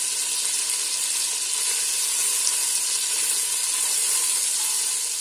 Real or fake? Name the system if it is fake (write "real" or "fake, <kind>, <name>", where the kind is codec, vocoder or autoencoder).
real